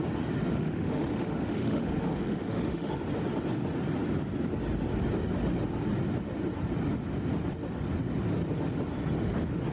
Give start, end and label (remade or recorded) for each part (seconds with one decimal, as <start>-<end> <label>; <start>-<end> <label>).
0.0-0.5 recorded; 0.5-2.9 remade; 2.9-9.7 recorded